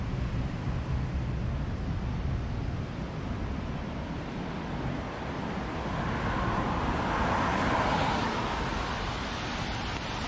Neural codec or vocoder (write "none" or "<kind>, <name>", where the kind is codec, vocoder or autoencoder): none